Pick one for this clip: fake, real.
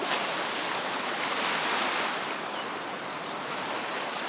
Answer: fake